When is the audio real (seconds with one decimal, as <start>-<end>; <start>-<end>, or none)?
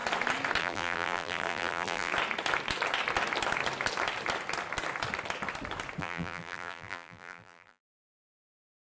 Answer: 0.0-0.6; 2.1-6.0